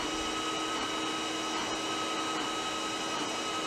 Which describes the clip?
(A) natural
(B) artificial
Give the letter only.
A